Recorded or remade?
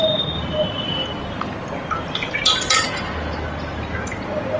recorded